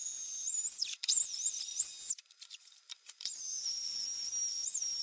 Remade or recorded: remade